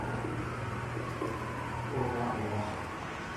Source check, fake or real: real